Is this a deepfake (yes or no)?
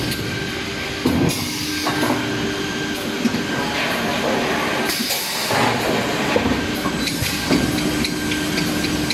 no